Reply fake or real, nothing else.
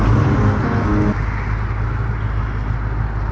real